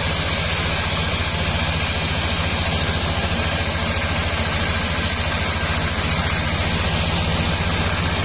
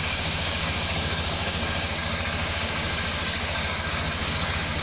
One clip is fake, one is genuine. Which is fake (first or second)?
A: second